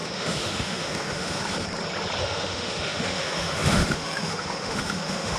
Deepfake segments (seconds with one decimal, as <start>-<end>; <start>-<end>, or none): 0.0-1.4; 2.2-5.4